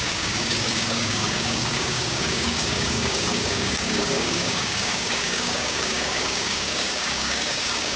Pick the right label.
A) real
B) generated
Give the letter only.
B